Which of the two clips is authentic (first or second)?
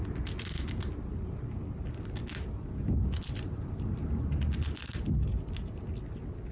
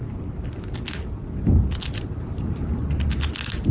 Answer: first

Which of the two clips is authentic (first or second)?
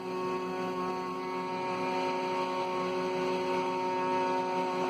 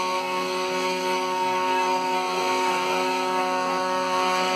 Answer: first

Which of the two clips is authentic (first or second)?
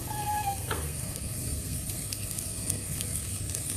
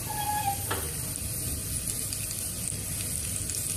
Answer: second